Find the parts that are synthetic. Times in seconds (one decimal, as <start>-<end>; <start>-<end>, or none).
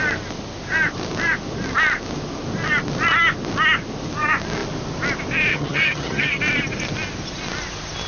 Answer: 5.5-6.4